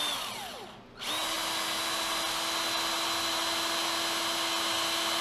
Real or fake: real